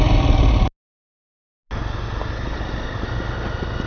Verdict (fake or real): real